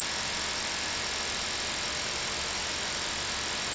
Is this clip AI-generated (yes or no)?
no